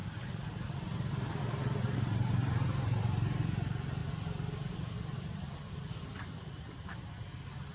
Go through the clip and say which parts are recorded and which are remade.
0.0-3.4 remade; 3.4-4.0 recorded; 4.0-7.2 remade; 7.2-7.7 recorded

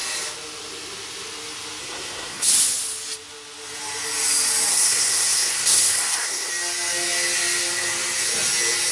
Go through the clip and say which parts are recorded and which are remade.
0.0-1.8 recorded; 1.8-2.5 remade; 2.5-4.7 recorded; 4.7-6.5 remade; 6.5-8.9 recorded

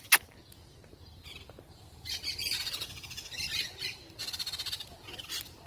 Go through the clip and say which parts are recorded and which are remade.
0.0-0.9 recorded; 0.9-2.2 remade; 2.2-5.7 recorded